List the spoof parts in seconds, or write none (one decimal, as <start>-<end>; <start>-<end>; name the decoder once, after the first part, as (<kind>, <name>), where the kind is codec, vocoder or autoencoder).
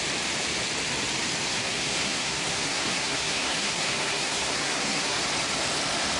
1.5-5.2 (codec, SNAC)